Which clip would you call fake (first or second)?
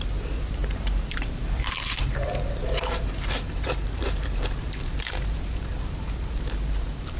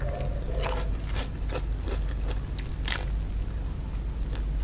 first